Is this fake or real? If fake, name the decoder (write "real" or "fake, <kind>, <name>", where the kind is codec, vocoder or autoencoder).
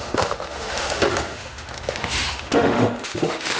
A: fake, autoencoder, DAC-VAE